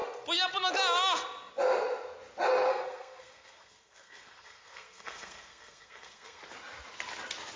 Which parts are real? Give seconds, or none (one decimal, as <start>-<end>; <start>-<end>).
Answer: 0.0-2.7; 6.4-7.6